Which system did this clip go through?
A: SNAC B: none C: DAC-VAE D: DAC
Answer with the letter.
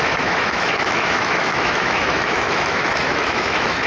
C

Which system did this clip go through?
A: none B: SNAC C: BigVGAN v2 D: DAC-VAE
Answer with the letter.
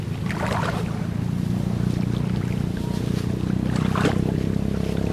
A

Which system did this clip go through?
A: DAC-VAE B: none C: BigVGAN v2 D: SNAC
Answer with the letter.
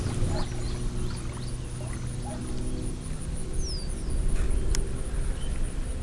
B